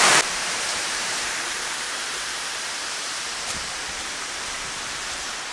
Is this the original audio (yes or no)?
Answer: no